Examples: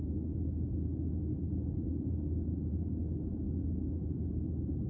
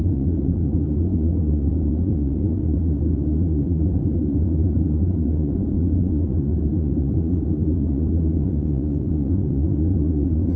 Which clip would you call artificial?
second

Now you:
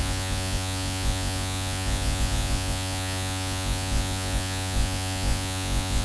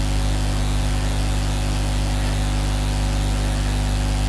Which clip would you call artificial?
first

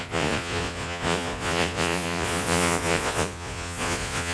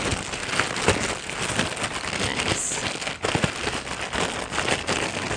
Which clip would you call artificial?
first